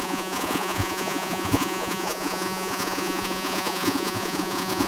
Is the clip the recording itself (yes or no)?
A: no